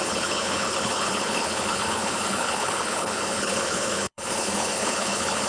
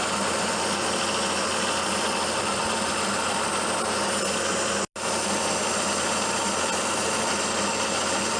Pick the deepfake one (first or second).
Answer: first